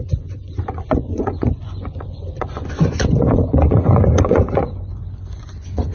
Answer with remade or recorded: remade